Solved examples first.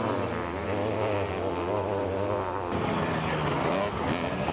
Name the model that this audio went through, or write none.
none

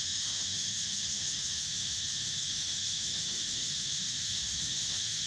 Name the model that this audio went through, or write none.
autoencoder, DAC-VAE